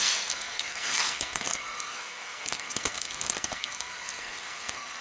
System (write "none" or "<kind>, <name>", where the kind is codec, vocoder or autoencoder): codec, SNAC